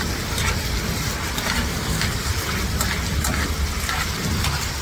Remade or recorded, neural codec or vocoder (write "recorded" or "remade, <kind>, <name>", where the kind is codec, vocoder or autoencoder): recorded